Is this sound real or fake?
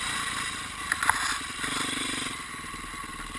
real